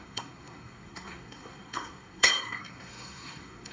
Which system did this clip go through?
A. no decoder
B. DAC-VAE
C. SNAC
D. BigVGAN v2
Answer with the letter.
C